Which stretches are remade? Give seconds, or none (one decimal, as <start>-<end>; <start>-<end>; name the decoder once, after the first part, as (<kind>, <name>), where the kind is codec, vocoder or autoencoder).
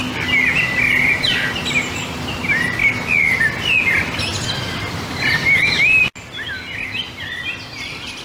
none